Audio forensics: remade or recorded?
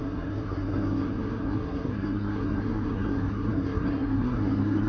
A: remade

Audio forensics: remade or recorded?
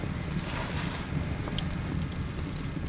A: recorded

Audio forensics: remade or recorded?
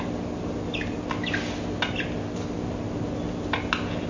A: recorded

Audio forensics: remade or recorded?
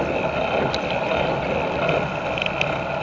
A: recorded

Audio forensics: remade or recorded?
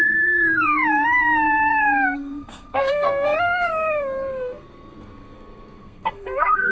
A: remade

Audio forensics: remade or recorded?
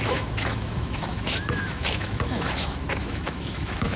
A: remade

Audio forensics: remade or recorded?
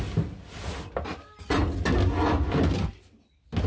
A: recorded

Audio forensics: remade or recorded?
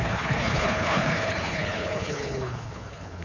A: remade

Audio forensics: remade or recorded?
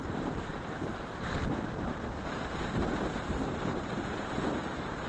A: remade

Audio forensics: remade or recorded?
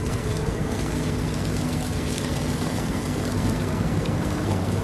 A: remade